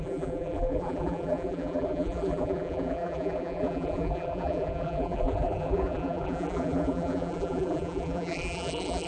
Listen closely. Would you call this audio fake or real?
fake